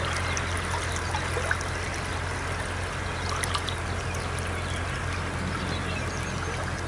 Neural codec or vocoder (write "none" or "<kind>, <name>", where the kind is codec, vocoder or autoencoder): none